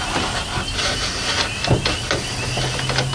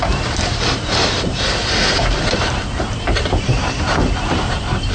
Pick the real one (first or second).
first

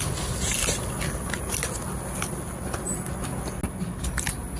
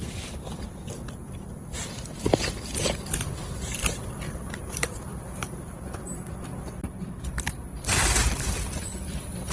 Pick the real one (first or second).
first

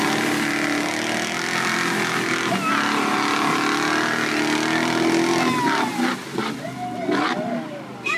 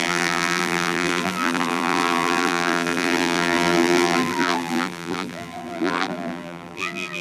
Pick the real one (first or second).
first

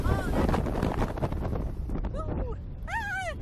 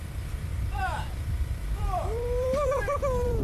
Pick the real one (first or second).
first